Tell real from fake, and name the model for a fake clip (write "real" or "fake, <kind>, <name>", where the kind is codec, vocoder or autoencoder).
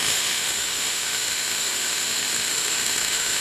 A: fake, autoencoder, DAC-VAE